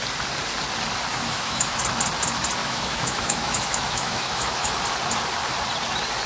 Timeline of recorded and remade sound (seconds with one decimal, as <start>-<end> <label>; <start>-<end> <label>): 0.0-1.1 recorded; 1.1-1.8 remade; 1.8-2.6 recorded; 2.6-4.7 remade; 4.7-6.3 recorded

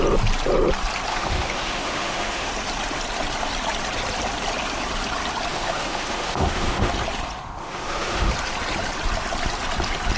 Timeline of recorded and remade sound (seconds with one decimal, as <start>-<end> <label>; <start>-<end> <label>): 0.0-1.1 recorded; 1.1-2.5 remade; 2.5-5.5 recorded; 5.5-6.9 remade; 6.9-7.6 recorded; 7.6-8.3 remade; 8.3-10.2 recorded

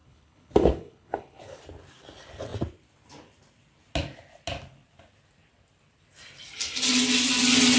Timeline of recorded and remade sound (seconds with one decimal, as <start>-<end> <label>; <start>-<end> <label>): 0.0-1.6 remade; 1.6-7.8 recorded

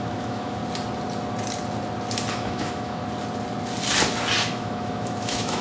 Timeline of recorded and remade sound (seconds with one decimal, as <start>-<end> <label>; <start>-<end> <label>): 0.0-0.6 remade; 0.6-2.3 recorded; 2.3-3.0 remade; 3.0-4.5 recorded; 4.5-5.6 remade

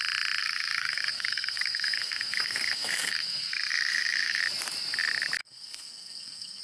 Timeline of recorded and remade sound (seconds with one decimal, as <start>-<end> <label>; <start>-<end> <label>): 0.0-0.4 recorded; 0.4-4.4 remade; 4.4-5.4 recorded; 5.4-6.6 remade